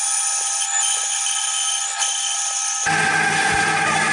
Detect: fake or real real